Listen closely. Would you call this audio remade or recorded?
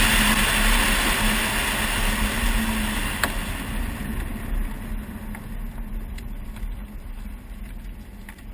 recorded